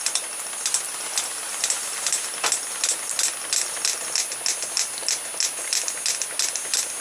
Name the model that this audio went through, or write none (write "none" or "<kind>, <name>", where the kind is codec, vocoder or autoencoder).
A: none